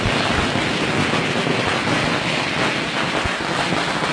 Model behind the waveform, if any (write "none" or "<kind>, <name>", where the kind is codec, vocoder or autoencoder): none